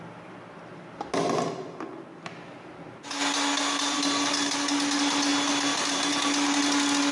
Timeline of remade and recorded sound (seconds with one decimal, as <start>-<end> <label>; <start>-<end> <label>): 0.0-7.1 recorded